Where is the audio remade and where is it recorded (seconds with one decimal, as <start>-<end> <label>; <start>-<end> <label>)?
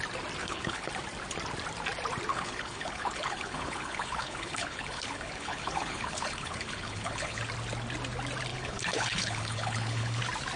0.0-0.4 recorded; 0.4-0.9 remade; 0.9-2.3 recorded; 2.3-7.4 remade; 7.4-8.5 recorded; 8.5-10.2 remade; 10.2-10.6 recorded